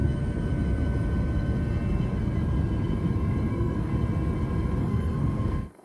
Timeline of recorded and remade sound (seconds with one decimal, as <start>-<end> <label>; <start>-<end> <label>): 0.0-3.5 recorded; 3.5-3.9 remade; 3.9-4.8 recorded; 4.8-5.8 remade